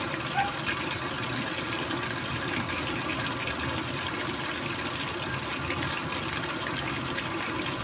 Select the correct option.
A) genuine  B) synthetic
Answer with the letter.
A